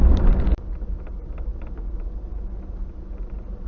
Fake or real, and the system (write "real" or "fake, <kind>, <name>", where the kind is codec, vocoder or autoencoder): real